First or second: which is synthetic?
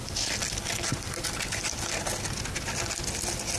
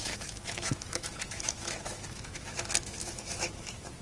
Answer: second